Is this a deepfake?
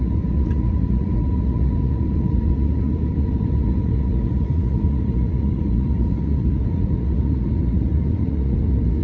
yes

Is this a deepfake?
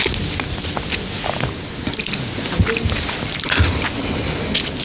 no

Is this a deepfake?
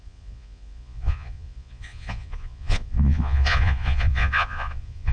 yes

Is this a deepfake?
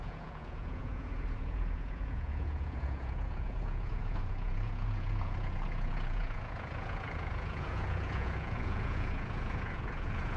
yes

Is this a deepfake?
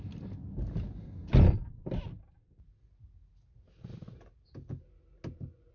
no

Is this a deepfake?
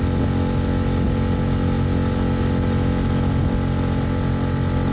no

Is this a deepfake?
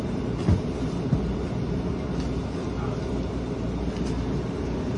no